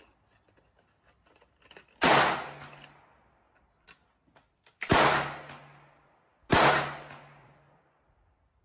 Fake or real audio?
real